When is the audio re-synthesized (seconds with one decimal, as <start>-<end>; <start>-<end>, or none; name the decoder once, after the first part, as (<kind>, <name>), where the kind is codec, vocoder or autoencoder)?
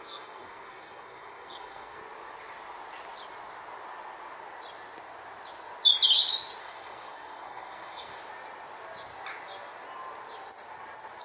0.0-2.0 (codec, SNAC); 6.6-8.2